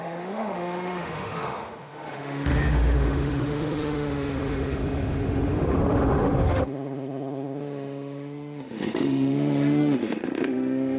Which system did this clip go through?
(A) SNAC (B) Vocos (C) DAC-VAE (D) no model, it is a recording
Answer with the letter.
C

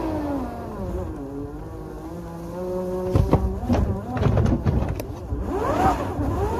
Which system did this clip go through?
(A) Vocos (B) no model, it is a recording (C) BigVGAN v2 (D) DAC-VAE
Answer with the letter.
B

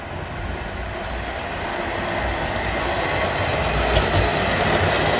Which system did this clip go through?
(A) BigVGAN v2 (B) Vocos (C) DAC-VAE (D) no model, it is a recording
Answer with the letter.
D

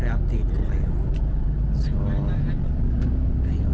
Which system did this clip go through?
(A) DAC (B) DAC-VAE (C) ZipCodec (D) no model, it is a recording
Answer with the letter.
D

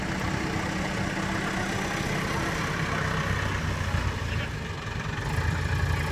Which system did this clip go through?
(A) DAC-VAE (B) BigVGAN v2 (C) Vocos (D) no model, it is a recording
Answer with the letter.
D